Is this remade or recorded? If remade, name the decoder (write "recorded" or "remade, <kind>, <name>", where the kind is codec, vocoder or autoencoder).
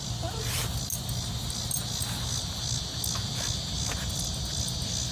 recorded